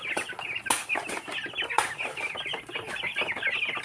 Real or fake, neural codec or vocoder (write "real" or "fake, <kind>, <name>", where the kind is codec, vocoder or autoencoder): real